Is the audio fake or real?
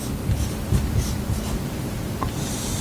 real